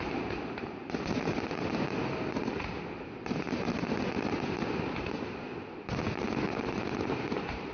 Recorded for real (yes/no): yes